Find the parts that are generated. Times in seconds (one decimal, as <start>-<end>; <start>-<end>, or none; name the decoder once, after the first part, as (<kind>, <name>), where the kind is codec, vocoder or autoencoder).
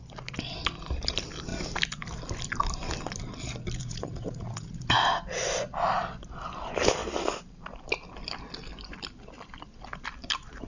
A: 3.8-5.0 (vocoder, Vocos)